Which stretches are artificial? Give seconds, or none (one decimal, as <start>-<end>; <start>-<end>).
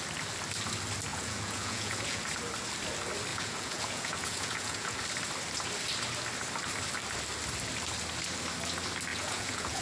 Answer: 1.1-2.2; 3.3-5.0; 9.1-9.8